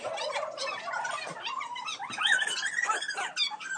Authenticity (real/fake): real